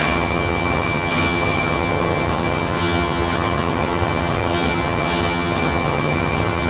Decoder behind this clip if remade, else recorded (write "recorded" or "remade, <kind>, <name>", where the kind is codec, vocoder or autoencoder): remade, vocoder, HiFi-GAN